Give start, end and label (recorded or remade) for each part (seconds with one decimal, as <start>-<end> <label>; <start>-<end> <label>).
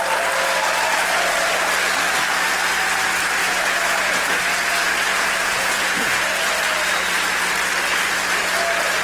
0.0-3.4 recorded; 3.4-4.4 remade; 4.4-5.1 recorded; 5.1-6.5 remade; 6.5-9.0 recorded